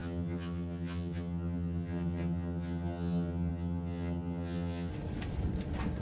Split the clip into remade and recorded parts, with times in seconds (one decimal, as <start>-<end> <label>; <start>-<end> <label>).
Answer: 0.0-4.9 remade; 4.9-6.0 recorded